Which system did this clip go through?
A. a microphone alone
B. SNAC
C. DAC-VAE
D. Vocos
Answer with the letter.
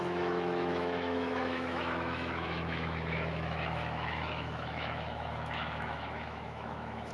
C